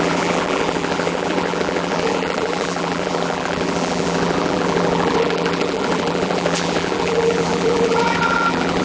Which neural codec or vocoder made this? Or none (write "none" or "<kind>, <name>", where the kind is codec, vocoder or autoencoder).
vocoder, BigVGAN v2